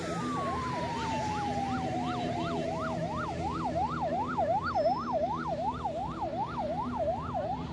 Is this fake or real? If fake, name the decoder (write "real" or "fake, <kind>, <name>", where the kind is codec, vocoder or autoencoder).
fake, vocoder, BigVGAN v2